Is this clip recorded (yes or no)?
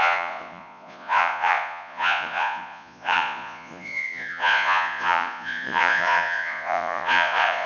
no